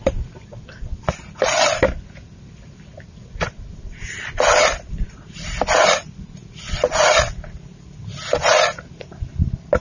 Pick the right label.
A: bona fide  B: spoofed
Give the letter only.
A